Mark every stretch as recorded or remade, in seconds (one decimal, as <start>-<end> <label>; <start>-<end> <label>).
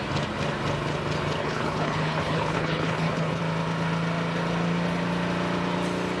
0.0-1.4 recorded; 1.4-3.4 remade; 3.4-6.2 recorded